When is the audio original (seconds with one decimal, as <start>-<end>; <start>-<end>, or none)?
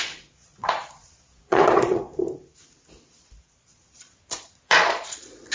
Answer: 2.1-3.1